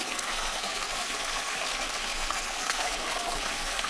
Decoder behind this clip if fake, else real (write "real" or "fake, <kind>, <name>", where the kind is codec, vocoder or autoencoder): fake, codec, SNAC